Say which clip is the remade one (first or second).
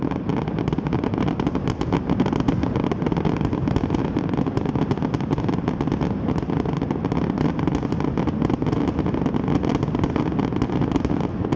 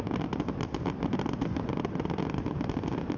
second